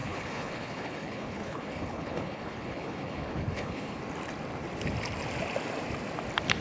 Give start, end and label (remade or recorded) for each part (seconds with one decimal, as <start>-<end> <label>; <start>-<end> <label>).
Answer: 0.0-4.0 remade; 4.0-6.6 recorded

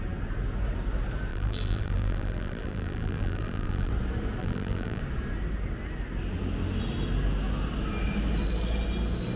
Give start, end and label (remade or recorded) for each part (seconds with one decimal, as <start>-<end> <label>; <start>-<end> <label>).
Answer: 0.0-1.3 recorded; 1.3-3.9 remade; 3.9-4.4 recorded; 4.4-5.0 remade; 5.0-9.4 recorded

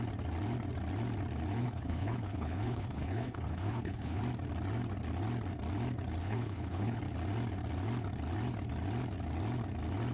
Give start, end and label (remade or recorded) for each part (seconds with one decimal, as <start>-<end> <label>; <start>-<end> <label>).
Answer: 0.0-1.6 recorded; 1.6-4.2 remade; 4.2-6.2 recorded; 6.2-7.0 remade; 7.0-10.1 recorded

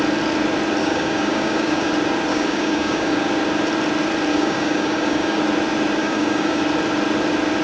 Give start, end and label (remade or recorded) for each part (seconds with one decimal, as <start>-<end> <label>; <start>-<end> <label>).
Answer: 0.0-0.8 recorded; 0.8-1.9 remade; 1.9-2.3 recorded; 2.3-3.3 remade; 3.3-4.3 recorded; 4.3-5.4 remade; 5.4-6.0 recorded; 6.0-6.6 remade; 6.6-7.6 recorded

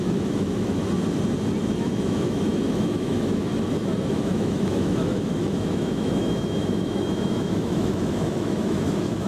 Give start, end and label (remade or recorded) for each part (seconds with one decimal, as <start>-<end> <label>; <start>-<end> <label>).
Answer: 0.0-0.8 remade; 0.8-1.8 recorded; 1.8-3.5 remade; 3.5-4.1 recorded; 4.1-9.3 remade